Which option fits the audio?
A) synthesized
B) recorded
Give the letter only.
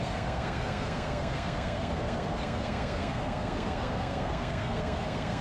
A